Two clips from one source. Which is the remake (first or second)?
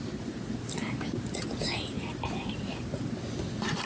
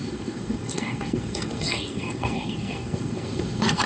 second